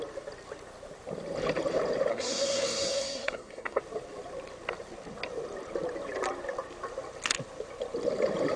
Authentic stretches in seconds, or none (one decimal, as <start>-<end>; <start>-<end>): 0.0-2.1; 3.8-8.6